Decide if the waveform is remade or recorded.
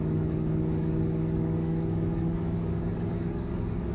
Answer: remade